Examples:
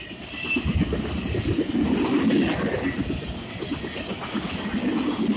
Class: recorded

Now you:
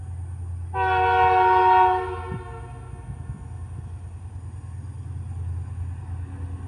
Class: recorded